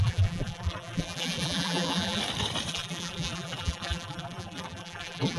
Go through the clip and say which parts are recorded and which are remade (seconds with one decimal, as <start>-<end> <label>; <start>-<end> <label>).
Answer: 0.0-2.2 remade; 2.2-2.7 recorded; 2.7-5.4 remade